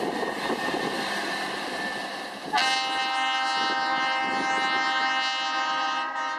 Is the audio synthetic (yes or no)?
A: no